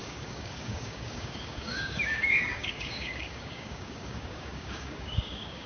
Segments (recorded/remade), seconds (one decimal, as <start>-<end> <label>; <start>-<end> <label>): 0.0-5.7 remade